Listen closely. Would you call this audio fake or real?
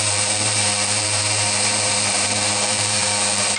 fake